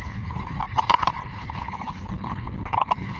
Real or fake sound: fake